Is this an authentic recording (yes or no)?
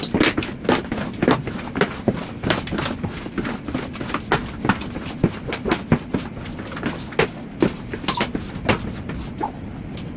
yes